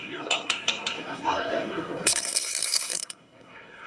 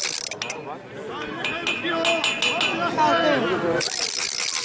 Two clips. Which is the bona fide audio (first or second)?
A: second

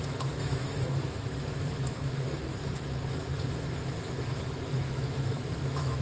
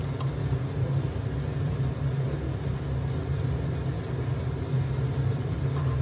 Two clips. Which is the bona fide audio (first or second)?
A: second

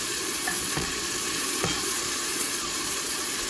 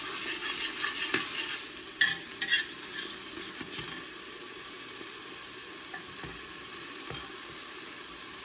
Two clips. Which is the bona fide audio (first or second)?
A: second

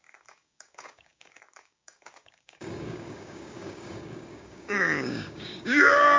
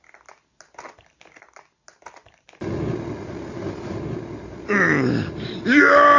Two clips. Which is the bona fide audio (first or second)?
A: second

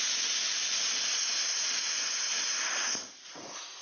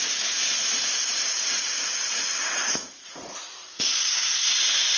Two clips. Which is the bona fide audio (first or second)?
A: first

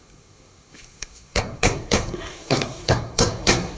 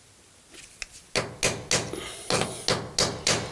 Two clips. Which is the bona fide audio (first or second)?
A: second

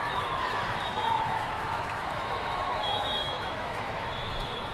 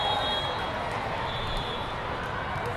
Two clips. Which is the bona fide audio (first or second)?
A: second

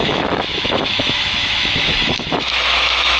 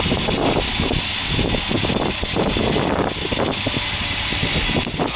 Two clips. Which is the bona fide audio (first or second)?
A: second